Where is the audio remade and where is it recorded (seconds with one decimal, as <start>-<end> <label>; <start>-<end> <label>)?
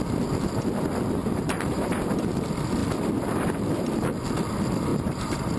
0.0-1.2 recorded; 1.2-2.0 remade; 2.0-4.9 recorded; 4.9-5.6 remade